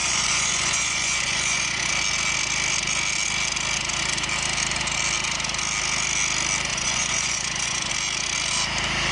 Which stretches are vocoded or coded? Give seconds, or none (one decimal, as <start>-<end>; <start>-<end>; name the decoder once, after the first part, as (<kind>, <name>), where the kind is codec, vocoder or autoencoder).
0.0-1.9 (vocoder, Vocos); 6.7-7.9